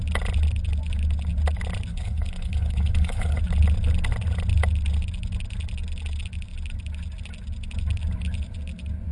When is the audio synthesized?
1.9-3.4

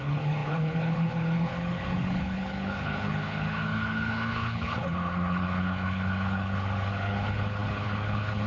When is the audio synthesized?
0.0-8.5

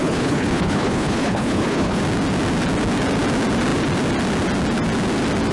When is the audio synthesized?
0.0-2.0

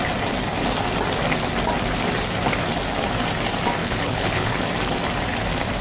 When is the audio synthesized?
3.8-4.6

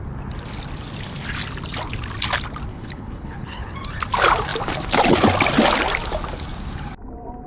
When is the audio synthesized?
2.7-3.7